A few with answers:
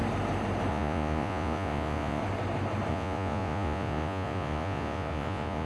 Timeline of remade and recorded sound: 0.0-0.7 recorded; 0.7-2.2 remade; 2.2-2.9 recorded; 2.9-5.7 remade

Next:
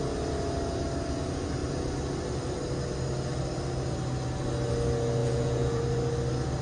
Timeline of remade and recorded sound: 0.0-5.2 recorded; 5.2-5.8 remade; 5.8-6.6 recorded

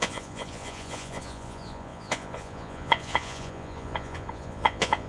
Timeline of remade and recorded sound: 0.0-5.1 remade

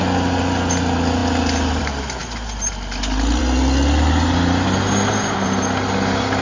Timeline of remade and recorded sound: 0.0-6.4 recorded

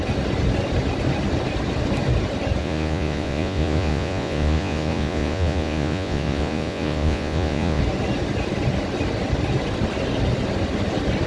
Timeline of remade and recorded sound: 0.0-2.6 recorded; 2.6-7.8 remade; 7.8-11.3 recorded

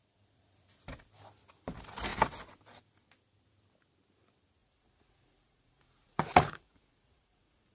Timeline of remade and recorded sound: 0.0-4.6 recorded; 4.6-7.7 remade

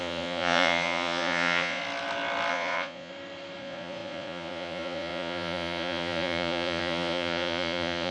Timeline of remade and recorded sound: 0.0-1.8 remade; 1.8-2.5 recorded; 2.5-3.1 remade; 3.1-3.6 recorded; 3.6-8.1 remade